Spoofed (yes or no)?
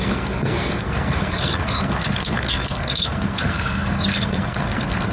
yes